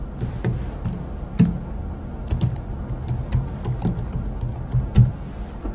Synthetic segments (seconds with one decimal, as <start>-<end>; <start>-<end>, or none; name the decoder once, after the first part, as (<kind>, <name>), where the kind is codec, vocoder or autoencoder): 1.8-2.8 (vocoder, BigVGAN v2); 4.5-5.1